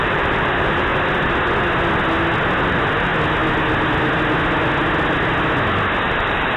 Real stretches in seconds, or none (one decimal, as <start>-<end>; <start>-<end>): 0.9-2.7; 3.1-6.0